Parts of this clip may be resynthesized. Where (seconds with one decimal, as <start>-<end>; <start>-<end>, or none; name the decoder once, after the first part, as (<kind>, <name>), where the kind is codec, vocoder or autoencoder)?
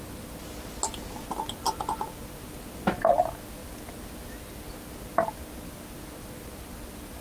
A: none